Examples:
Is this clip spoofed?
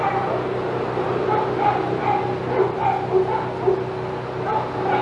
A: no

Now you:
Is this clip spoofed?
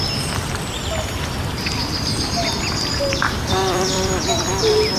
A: yes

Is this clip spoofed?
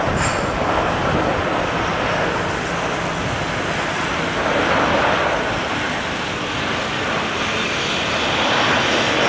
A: no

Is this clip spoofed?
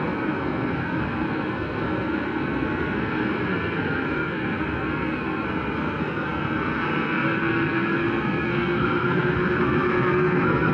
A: yes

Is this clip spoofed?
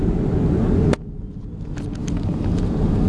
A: no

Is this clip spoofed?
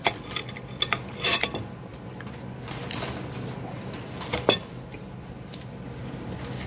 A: no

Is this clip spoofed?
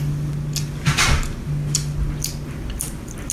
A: no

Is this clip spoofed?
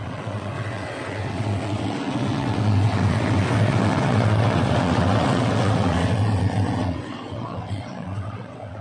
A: yes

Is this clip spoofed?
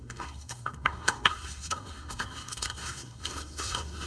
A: yes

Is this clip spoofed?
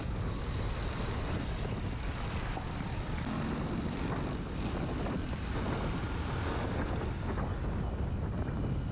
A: no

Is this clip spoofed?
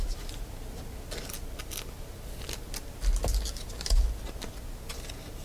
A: no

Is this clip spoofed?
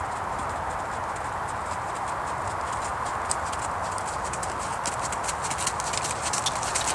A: no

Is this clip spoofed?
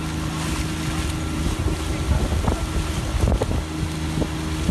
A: no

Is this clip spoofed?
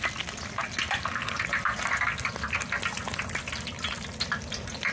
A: no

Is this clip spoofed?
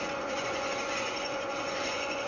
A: yes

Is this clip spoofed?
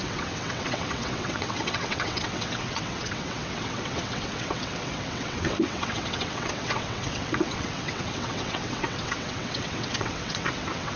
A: yes